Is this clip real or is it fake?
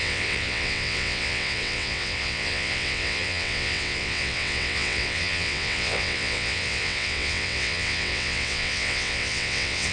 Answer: fake